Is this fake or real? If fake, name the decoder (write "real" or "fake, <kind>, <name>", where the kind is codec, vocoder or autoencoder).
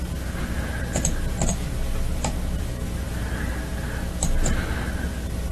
real